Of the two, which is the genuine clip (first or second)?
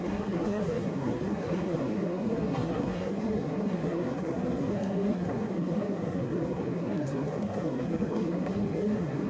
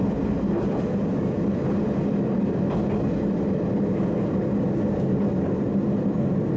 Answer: second